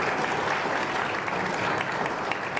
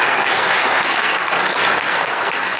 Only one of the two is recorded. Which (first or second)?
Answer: first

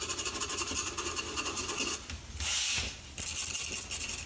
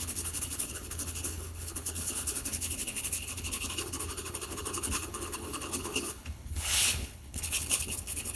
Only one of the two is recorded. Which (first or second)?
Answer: first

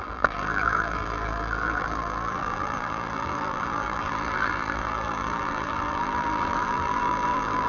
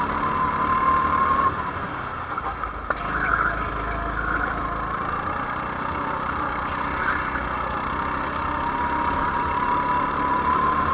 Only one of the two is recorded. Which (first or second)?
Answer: second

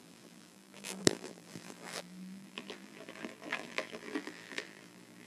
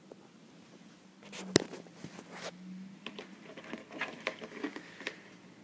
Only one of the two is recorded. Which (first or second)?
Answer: second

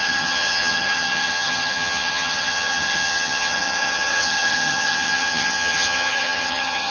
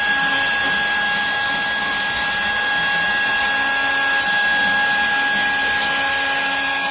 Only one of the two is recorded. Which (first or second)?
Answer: second